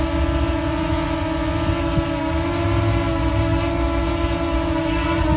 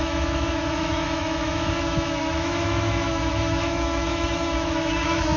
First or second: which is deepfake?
second